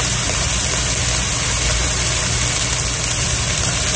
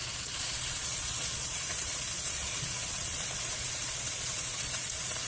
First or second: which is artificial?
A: second